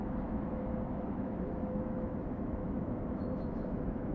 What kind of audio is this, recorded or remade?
remade